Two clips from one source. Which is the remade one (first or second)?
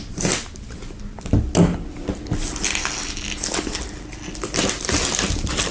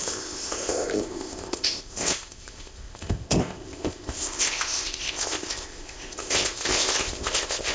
second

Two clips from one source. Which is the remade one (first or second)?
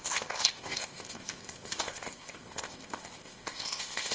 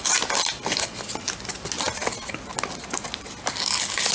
first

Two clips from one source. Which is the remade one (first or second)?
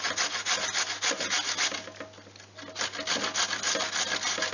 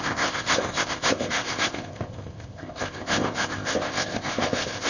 second